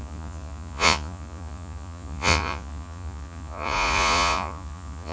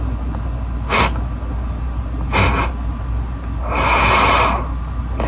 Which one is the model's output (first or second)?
first